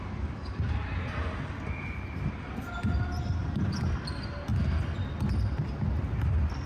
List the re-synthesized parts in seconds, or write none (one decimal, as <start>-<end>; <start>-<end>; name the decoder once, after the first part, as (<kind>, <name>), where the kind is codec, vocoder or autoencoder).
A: none